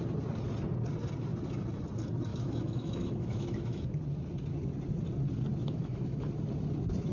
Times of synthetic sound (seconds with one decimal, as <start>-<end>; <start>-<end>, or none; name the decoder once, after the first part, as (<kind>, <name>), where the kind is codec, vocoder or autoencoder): 2.3-4.0 (autoencoder, DAC-VAE); 5.6-6.3